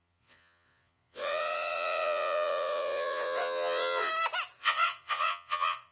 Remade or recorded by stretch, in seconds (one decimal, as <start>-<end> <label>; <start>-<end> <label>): 0.0-4.1 remade; 4.1-4.6 recorded; 4.6-5.9 remade